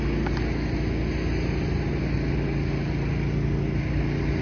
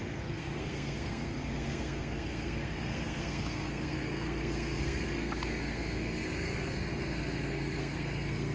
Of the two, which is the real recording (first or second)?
first